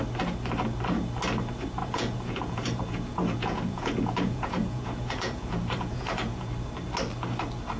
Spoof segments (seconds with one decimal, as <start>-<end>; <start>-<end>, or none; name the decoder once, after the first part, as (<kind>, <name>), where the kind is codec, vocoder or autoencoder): 1.8-6.5 (vocoder, Vocos)